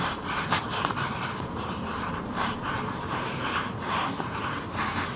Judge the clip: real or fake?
fake